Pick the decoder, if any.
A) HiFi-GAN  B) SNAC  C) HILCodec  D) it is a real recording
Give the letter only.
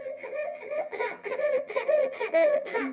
A